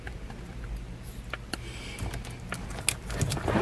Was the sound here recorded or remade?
recorded